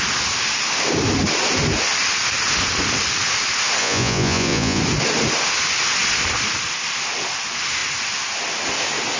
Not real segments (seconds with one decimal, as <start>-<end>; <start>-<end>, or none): 3.8-4.8